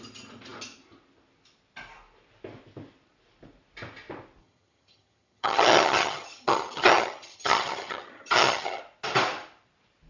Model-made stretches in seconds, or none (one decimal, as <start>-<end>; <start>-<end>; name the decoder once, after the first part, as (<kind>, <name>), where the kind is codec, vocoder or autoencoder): 4.4-8.8 (vocoder, HiFi-GAN)